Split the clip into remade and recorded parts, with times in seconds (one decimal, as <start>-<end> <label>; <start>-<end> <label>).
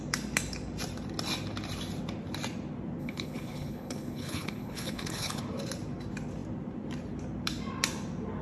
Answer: 0.0-3.0 recorded; 3.0-5.4 remade; 5.4-8.4 recorded